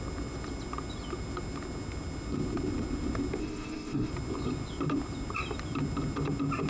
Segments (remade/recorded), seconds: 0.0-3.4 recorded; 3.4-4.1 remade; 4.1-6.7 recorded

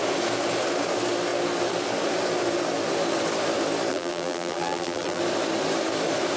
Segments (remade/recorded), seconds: 0.0-3.9 recorded; 3.9-5.2 remade; 5.2-6.4 recorded

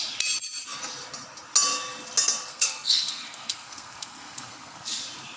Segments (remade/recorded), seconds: 0.0-2.5 recorded; 2.5-5.0 remade; 5.0-5.4 recorded

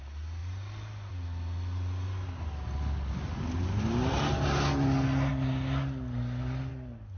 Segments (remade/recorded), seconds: 0.0-7.2 recorded